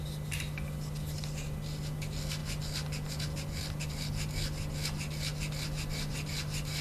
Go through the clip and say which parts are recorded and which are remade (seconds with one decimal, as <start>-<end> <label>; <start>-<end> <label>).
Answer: 0.0-6.8 recorded